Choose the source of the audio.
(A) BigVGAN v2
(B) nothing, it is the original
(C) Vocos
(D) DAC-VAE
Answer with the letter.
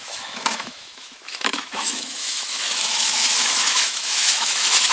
D